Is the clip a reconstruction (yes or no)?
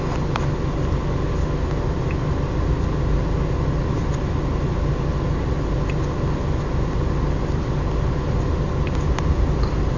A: no